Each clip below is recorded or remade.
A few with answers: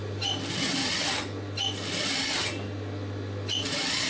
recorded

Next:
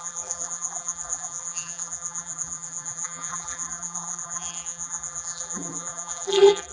remade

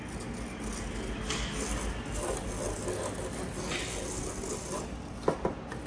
recorded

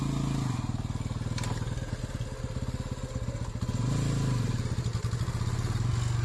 recorded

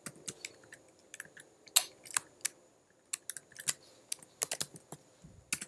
recorded